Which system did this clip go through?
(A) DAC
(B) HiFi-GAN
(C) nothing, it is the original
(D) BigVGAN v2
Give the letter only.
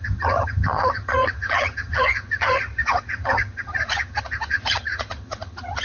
B